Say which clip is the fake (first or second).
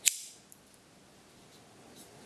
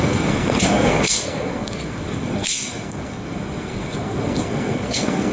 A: second